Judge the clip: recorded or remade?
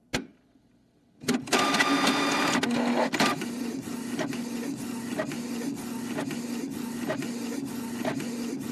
recorded